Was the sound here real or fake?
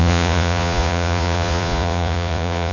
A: fake